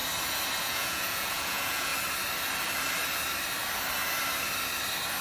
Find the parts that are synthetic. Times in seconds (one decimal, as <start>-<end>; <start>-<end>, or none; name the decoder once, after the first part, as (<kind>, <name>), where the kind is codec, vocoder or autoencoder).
0.6-1.9 (vocoder, Vocos)